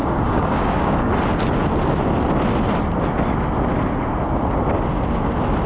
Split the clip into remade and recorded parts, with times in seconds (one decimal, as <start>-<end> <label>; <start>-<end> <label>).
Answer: 0.0-1.1 remade; 1.1-5.7 recorded